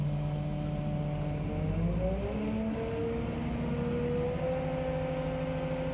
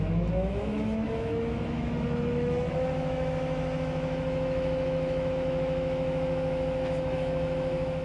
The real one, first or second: first